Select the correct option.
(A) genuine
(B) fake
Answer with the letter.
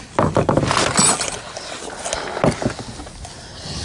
A